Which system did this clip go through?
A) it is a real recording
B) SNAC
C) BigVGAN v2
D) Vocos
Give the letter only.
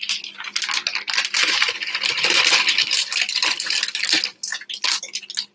A